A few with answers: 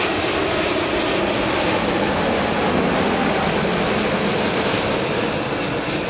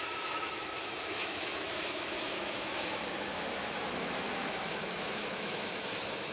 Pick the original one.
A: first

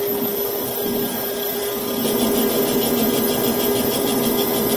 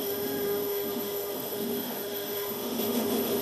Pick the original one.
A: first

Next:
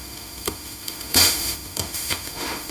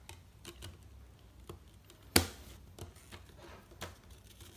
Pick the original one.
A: second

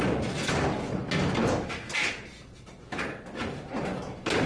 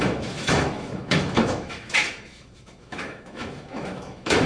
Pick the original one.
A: first